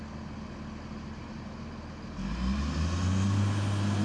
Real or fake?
real